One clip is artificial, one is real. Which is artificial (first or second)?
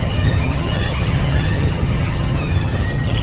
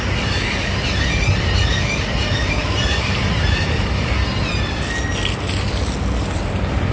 first